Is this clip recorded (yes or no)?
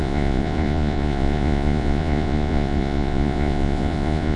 no